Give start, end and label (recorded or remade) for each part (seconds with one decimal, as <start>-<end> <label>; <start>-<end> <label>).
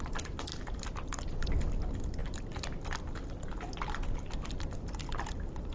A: 0.0-5.7 recorded